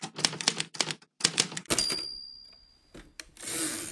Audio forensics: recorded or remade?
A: recorded